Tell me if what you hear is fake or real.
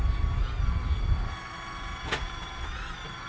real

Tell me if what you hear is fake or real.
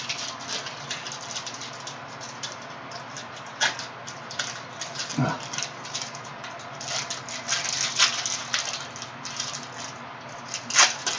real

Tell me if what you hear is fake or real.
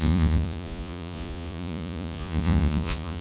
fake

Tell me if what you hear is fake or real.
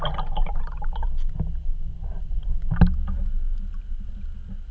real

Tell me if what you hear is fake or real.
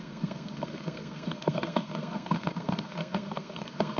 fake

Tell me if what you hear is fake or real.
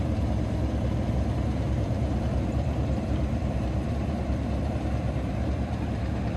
fake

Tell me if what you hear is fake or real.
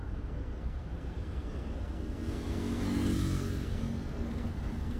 fake